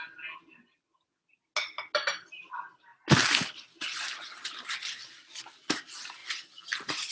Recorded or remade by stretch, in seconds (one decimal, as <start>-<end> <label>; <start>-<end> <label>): 0.0-7.1 recorded